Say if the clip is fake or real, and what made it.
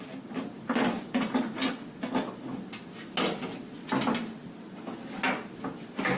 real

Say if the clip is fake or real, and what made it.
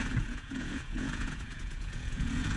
fake, vocoder, Vocos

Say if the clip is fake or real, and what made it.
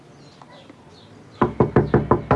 real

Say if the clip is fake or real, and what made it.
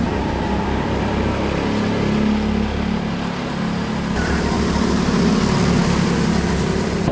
real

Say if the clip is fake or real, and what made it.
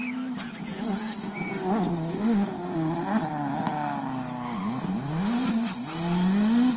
real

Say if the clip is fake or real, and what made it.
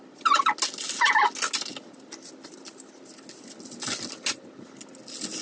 real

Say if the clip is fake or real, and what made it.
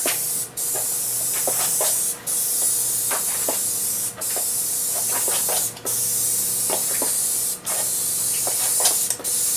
real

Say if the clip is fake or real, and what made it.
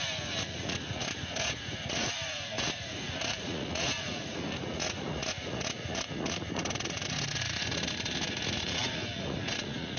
fake, vocoder, Vocos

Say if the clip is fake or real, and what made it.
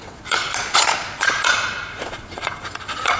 fake, vocoder, Vocos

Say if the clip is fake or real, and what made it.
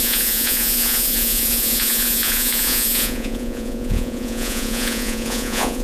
fake, vocoder, Vocos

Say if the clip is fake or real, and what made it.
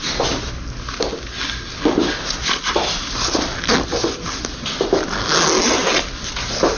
real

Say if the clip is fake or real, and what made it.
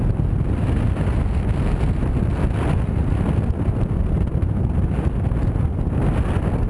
real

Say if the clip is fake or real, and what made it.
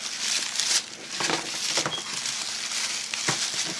real